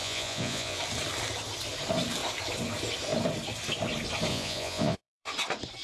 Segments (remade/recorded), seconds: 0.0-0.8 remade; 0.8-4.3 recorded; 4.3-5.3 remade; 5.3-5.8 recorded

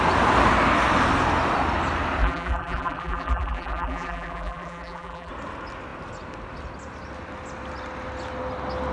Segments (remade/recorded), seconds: 0.0-2.2 recorded; 2.2-5.3 remade; 5.3-8.9 recorded

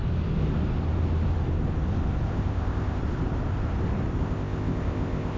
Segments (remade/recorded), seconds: 0.0-2.3 recorded; 2.3-3.0 remade; 3.0-4.2 recorded; 4.2-5.4 remade

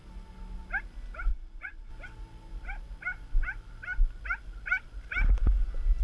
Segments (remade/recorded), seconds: 0.0-1.3 recorded; 1.3-1.9 remade; 1.9-6.0 recorded

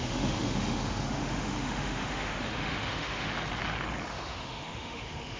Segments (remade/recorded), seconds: 0.0-3.3 remade; 3.3-4.1 recorded; 4.1-5.4 remade

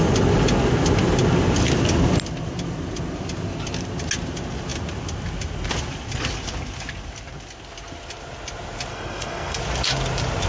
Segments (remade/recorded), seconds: 0.0-8.9 recorded; 8.9-9.6 remade; 9.6-10.5 recorded

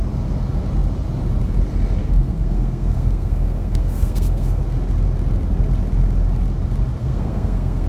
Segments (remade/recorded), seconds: 0.0-2.0 recorded; 2.0-4.6 remade; 4.6-7.0 recorded; 7.0-7.9 remade

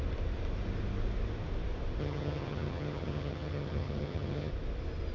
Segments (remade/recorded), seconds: 0.0-2.0 recorded; 2.0-4.5 remade; 4.5-5.1 recorded